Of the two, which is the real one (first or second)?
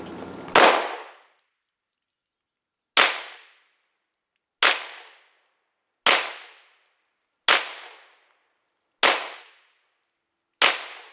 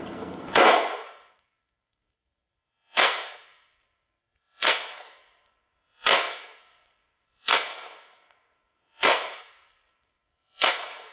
first